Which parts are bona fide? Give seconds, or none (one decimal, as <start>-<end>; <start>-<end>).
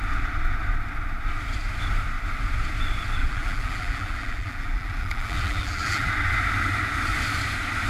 0.0-3.2; 6.1-7.9